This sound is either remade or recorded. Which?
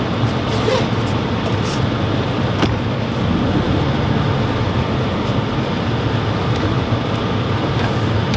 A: recorded